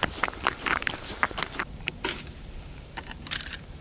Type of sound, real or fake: fake